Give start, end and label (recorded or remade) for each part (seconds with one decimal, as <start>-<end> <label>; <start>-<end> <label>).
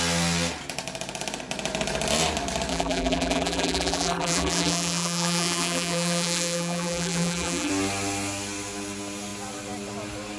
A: 0.0-2.7 recorded; 2.7-7.7 remade; 7.7-10.4 recorded